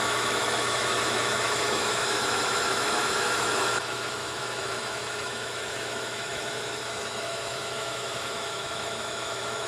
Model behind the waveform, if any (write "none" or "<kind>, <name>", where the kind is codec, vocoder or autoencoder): autoencoder, DAC-VAE